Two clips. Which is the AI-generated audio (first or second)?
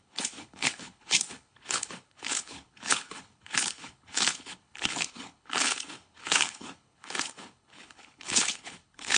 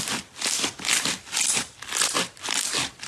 first